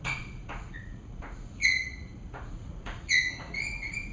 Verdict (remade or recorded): remade